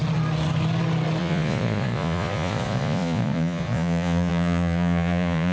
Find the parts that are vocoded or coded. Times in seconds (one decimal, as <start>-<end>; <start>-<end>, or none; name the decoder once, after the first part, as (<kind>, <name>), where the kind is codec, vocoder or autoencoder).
1.2-5.5 (vocoder, Vocos)

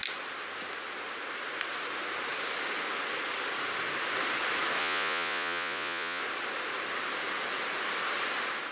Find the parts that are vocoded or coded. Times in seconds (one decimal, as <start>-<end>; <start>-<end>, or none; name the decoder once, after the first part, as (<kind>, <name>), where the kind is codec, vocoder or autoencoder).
4.8-6.2 (vocoder, Vocos)

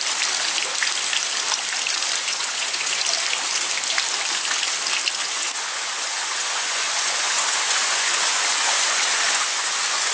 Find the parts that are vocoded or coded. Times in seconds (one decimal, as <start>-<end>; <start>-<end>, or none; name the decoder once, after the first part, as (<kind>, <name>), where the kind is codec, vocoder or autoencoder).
2.3-2.9 (vocoder, Vocos); 5.2-10.1

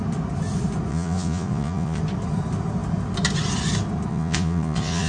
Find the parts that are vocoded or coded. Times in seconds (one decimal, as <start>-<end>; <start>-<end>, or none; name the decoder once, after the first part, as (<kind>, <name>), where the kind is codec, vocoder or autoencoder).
0.9-2.0 (vocoder, Vocos); 4.1-5.1

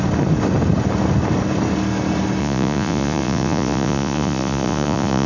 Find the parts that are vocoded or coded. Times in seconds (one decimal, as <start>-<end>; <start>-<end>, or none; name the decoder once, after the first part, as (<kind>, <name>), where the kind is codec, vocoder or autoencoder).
2.4-5.3 (vocoder, Vocos)

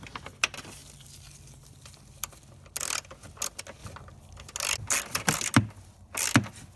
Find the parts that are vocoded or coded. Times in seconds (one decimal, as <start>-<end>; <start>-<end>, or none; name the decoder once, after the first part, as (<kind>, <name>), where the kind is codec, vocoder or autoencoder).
none